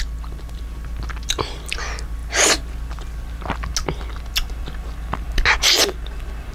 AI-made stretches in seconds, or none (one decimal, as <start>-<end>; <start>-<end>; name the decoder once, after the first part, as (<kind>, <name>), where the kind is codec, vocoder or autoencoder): none